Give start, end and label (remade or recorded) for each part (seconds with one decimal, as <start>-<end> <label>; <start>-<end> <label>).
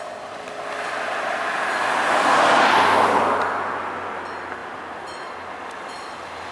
0.0-6.5 recorded